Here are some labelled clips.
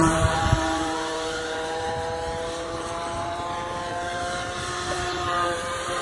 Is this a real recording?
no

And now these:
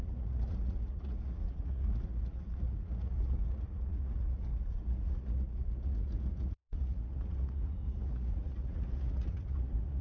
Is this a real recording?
no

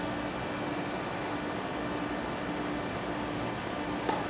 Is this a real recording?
yes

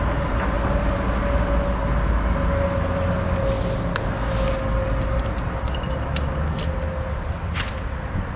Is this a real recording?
yes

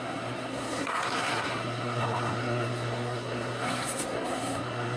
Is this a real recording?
no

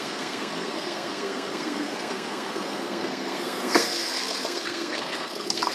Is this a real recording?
no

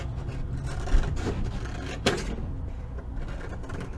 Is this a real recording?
yes